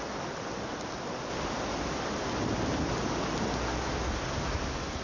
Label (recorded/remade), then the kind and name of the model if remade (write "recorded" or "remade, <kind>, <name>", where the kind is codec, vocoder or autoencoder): recorded